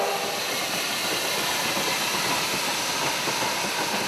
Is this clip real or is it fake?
real